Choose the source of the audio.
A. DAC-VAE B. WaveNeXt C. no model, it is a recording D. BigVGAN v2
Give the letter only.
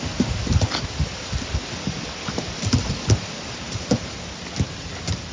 C